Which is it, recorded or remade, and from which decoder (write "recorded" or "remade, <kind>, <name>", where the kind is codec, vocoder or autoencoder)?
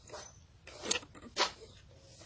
recorded